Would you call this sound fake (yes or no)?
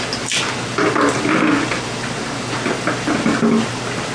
no